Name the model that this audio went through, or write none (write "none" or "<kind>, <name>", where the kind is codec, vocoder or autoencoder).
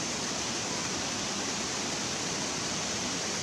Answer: none